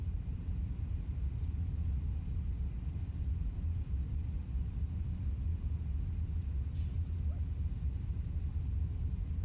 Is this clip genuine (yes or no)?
yes